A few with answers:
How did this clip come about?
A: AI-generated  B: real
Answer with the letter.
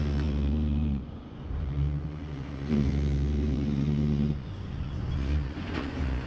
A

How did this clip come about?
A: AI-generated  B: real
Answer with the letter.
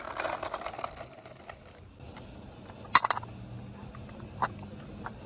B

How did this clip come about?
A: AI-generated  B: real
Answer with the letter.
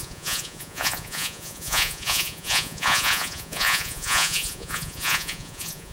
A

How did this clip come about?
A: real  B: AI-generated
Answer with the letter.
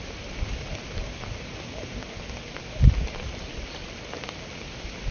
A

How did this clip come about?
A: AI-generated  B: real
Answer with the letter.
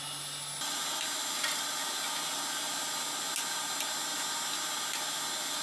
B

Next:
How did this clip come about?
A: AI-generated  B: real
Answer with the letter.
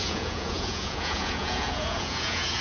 A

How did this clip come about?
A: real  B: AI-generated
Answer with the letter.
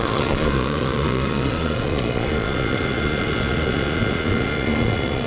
B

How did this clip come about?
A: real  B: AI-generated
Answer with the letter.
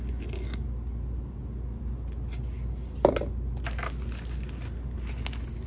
A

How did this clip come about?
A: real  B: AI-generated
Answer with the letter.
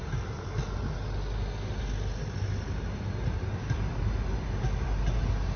A